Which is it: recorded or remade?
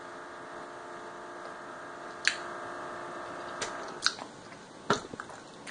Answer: recorded